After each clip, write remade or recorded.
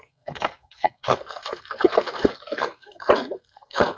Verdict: remade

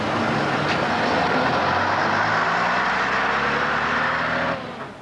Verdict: recorded